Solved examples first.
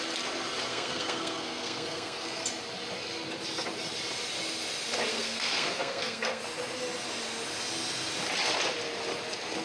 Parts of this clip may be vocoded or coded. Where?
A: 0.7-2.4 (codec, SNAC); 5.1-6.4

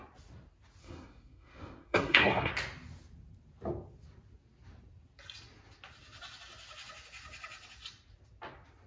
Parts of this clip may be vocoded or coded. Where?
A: 0.8-2.5 (codec, SNAC)

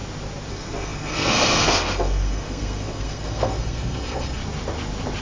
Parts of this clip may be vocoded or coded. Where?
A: 0.5-4.4 (codec, SNAC)

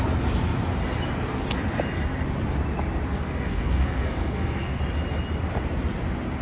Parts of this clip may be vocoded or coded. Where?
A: 3.1-4.8 (codec, SNAC)

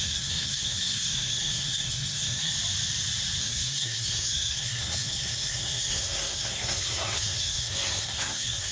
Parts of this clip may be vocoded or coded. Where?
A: 0.0-2.5 (codec, SNAC); 3.4-8.7

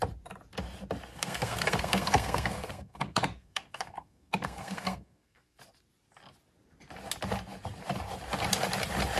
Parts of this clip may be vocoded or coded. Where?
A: 1.1-5.6 (codec, SNAC)

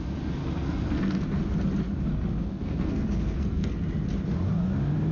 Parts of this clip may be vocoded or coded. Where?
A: 0.4-1.2 (codec, SNAC); 2.1-3.8

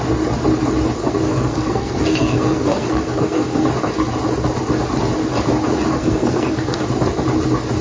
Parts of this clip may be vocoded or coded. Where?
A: 1.0-3.7 (codec, SNAC); 5.9-6.8